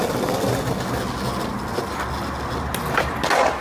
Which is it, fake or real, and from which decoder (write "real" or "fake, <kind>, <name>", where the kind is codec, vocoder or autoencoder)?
real